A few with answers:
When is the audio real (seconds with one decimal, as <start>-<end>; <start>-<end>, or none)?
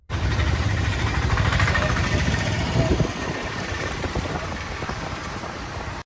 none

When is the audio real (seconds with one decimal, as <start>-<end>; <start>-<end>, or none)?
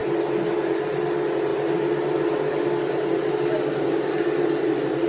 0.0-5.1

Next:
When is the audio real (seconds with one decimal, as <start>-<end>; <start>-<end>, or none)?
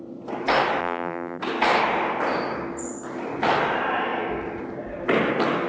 0.0-0.8; 1.4-5.7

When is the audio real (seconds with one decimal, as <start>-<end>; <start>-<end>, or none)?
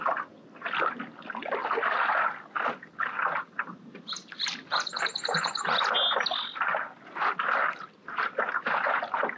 0.0-9.4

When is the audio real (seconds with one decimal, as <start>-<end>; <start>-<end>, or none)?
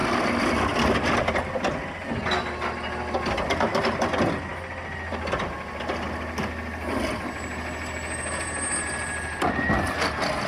0.0-10.5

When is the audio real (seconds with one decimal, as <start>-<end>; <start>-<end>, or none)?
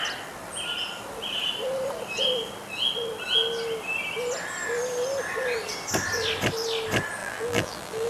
0.0-7.2